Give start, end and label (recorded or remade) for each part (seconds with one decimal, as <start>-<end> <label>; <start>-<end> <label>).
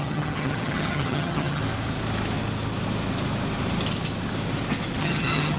0.0-1.6 remade; 1.6-5.0 recorded; 5.0-5.6 remade